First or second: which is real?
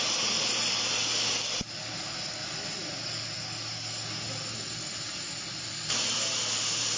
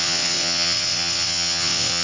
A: first